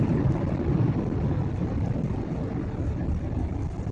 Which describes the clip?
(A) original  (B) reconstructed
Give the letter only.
A